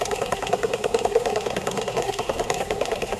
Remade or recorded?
remade